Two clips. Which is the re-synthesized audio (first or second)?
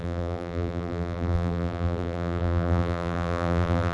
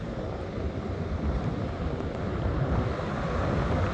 first